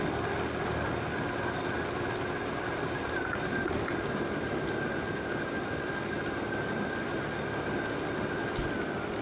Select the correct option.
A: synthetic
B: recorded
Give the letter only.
B